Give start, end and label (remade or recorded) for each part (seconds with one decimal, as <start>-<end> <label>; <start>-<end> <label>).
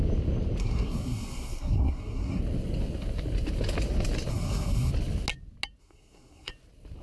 0.0-0.6 recorded; 0.6-2.4 remade; 2.4-4.3 recorded; 4.3-4.9 remade; 4.9-5.8 recorded; 5.8-6.5 remade; 6.5-7.0 recorded